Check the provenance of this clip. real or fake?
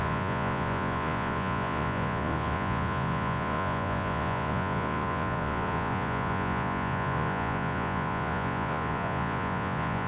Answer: fake